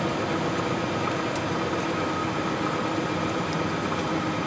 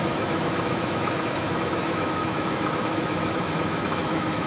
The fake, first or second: second